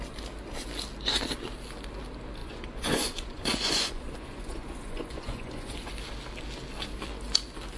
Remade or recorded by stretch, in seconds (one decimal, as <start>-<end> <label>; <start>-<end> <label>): 0.0-2.4 recorded; 2.4-5.9 remade; 5.9-7.8 recorded